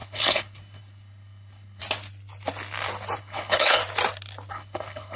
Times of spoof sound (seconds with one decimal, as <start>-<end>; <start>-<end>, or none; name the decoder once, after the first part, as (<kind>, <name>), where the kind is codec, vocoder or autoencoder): 0.0-1.8 (codec, HILCodec); 3.2-3.8; 4.5-5.2